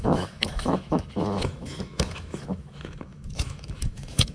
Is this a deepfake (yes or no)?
yes